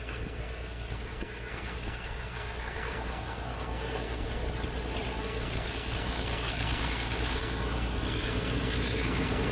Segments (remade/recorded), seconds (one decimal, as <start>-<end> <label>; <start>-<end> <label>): 0.0-4.4 remade; 4.4-5.2 recorded; 5.2-9.5 remade

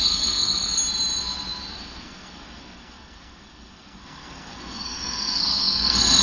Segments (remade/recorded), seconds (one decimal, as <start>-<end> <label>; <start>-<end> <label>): 0.0-0.8 remade; 0.8-1.7 recorded; 1.7-6.2 remade

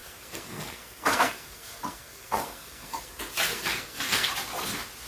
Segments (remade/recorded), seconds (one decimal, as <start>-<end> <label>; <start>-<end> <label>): 0.0-3.1 remade; 3.1-3.5 recorded; 3.5-4.3 remade; 4.3-5.1 recorded

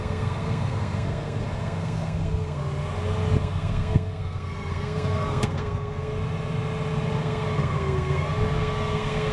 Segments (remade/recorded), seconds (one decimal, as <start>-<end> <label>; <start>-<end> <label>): 0.0-2.6 remade; 2.6-3.4 recorded; 3.4-6.1 remade; 6.1-7.2 recorded; 7.2-9.3 remade

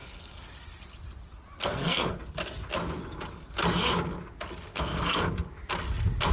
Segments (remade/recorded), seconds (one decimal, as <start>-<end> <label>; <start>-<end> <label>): 0.0-0.5 remade; 0.5-1.6 recorded; 1.6-2.2 remade; 2.2-4.7 recorded; 4.7-5.3 remade; 5.3-6.3 recorded

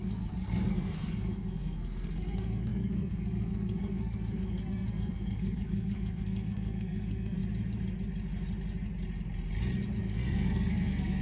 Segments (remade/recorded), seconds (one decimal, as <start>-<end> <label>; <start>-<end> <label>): 0.0-7.4 remade; 7.4-10.0 recorded; 10.0-11.2 remade